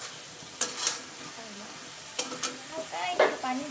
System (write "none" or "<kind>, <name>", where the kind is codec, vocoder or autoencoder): none